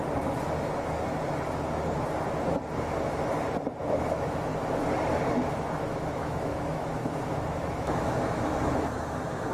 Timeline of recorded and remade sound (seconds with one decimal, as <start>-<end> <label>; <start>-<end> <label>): 0.0-3.8 recorded; 3.8-4.5 remade; 4.5-5.5 recorded; 5.5-9.5 remade